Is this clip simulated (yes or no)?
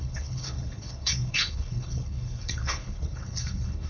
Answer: yes